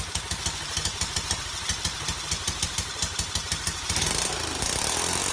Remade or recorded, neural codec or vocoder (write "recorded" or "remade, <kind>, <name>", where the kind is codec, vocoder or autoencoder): recorded